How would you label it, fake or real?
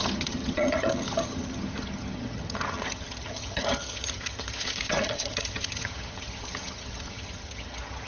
fake